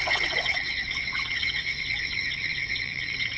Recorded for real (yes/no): no